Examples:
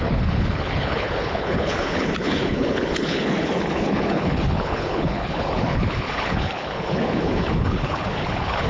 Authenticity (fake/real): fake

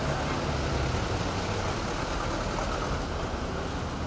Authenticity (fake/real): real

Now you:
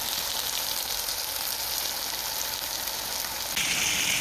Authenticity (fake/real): real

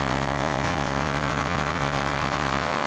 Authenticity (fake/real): fake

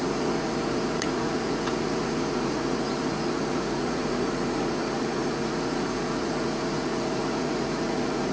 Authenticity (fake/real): fake